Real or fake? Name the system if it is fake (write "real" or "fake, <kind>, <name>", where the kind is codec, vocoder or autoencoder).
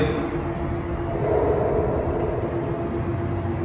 real